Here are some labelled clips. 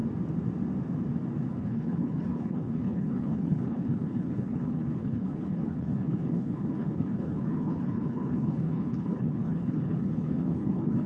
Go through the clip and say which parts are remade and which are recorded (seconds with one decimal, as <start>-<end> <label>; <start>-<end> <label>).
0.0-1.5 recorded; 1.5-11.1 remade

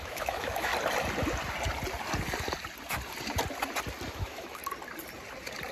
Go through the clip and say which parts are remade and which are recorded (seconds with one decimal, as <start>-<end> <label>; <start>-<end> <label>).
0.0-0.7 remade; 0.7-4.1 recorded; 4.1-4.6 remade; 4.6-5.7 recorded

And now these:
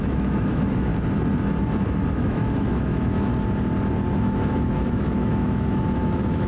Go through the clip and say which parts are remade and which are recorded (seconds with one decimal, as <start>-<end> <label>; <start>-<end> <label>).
0.0-0.9 remade; 0.9-2.1 recorded; 2.1-3.3 remade; 3.3-4.2 recorded; 4.2-6.5 remade